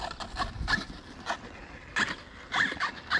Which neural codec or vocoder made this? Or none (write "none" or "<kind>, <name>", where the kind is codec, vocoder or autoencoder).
none